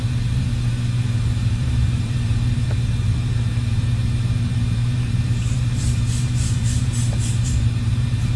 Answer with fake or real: fake